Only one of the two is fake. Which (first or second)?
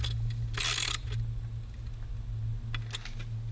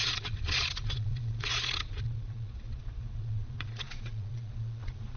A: second